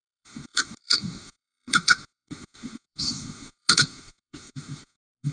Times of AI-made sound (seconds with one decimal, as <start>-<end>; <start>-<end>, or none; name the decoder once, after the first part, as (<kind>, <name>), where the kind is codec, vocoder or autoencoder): 0.0-5.3 (codec, SNAC)